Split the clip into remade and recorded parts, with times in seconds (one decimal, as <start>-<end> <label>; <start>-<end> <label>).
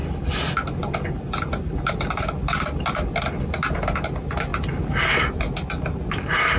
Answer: 0.0-6.6 recorded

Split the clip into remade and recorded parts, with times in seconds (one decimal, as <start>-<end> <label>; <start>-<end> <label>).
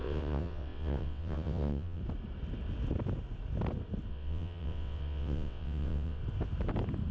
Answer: 0.0-2.0 remade; 2.0-4.1 recorded; 4.1-6.2 remade; 6.2-7.1 recorded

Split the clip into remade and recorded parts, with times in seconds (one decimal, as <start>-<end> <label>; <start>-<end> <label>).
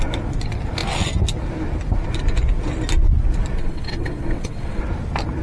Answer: 0.0-3.6 recorded; 3.6-4.8 remade; 4.8-5.4 recorded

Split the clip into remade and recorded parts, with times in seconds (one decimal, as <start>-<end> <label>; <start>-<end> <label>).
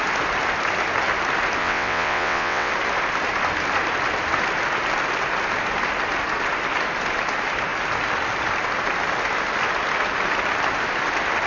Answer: 0.0-1.6 recorded; 1.6-2.7 remade; 2.7-11.5 recorded